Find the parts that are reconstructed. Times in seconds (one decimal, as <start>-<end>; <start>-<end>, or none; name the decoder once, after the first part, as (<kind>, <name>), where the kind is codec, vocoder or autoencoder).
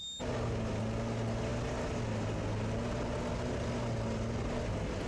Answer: none